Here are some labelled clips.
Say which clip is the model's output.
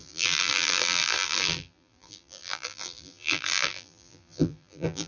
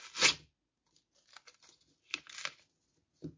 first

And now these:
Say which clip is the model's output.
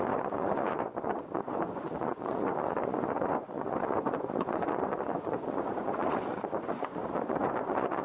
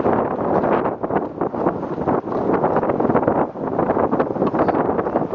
first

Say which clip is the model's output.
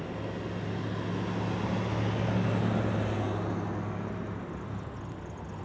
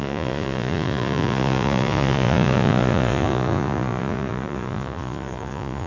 second